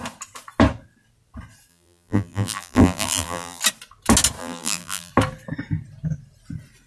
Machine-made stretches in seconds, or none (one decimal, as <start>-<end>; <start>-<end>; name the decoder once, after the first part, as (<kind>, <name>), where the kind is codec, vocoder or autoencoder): 1.7-3.6 (vocoder, BigVGAN v2); 4.4-5.1